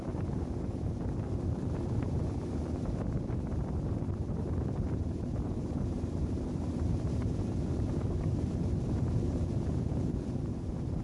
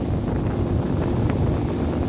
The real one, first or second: second